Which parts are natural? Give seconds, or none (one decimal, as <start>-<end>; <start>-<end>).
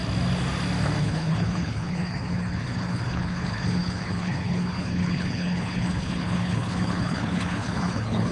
0.0-1.0